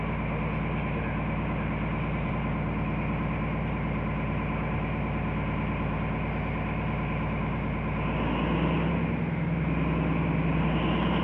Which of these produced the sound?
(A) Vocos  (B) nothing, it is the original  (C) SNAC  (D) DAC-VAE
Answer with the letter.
B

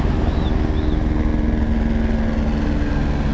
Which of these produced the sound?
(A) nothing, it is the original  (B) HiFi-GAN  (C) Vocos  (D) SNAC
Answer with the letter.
A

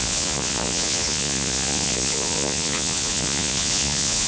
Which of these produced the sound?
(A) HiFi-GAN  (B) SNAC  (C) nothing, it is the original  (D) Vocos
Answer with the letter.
D